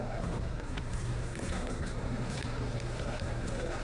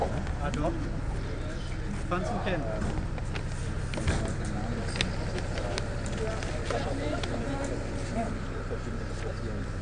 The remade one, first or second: first